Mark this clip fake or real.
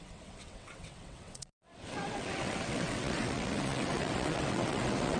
fake